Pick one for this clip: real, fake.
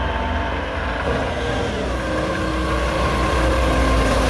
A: real